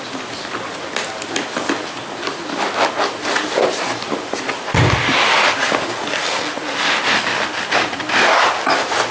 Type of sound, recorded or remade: recorded